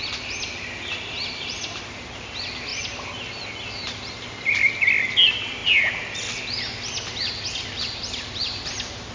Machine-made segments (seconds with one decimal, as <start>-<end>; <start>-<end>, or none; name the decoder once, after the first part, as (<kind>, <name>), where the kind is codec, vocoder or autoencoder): none